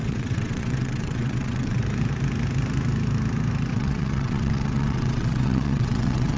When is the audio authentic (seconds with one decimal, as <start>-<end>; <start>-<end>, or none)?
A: 1.8-3.7